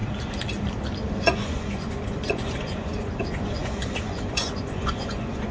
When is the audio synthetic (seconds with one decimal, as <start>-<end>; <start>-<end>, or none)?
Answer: 1.2-5.5